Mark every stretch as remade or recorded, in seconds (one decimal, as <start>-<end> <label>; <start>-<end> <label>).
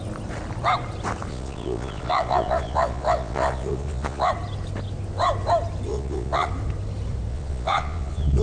0.0-1.3 recorded; 1.3-4.3 remade; 4.3-5.9 recorded; 5.9-6.5 remade; 6.5-7.3 recorded; 7.3-8.4 remade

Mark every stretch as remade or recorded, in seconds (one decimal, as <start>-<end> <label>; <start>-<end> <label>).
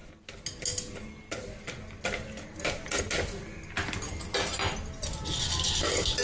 0.0-6.2 recorded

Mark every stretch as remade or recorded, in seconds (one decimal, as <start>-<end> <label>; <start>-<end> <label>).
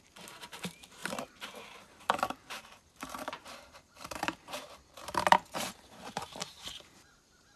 0.0-7.6 remade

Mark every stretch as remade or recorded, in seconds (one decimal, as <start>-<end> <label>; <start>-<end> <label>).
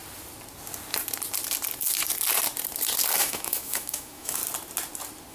0.0-3.2 recorded; 3.2-4.4 remade; 4.4-5.3 recorded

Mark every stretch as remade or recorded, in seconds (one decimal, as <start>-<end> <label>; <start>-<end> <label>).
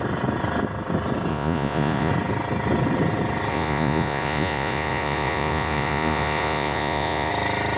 0.0-1.3 recorded; 1.3-2.1 remade; 2.1-3.5 recorded; 3.5-7.3 remade; 7.3-7.8 recorded